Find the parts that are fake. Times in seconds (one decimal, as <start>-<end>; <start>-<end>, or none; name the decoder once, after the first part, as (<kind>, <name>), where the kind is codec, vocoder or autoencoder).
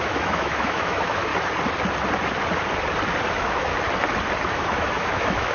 0.0-1.3 (autoencoder, DAC-VAE); 3.3-3.7; 4.5-5.5